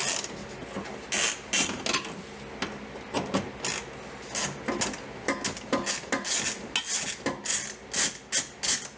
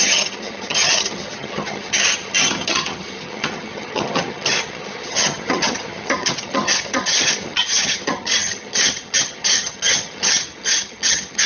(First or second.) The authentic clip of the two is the first